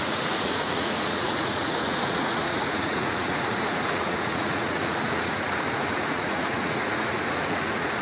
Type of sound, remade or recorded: remade